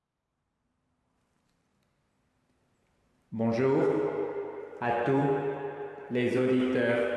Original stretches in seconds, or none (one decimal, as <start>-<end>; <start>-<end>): 1.7-3.8; 5.2-5.7